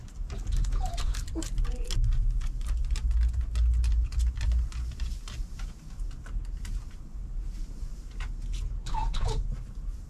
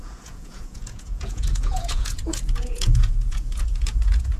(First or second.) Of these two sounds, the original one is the first